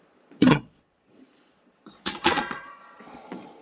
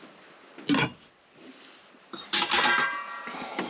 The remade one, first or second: first